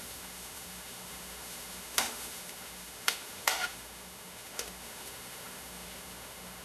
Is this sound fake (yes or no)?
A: yes